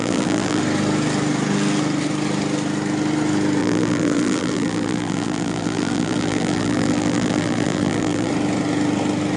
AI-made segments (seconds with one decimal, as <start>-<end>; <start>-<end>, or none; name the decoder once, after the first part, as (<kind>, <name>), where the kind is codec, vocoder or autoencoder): 0.0-0.6 (vocoder, BigVGAN v2); 3.6-8.3